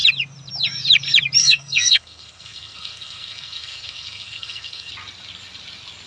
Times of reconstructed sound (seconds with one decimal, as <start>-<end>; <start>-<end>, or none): 1.4-4.9